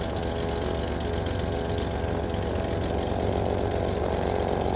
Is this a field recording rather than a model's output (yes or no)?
yes